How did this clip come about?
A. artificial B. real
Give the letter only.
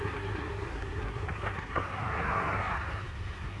A